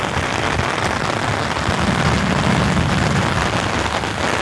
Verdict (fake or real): real